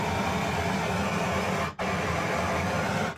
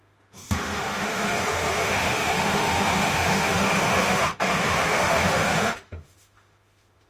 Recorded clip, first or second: first